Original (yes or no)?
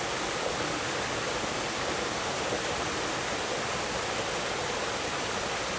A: yes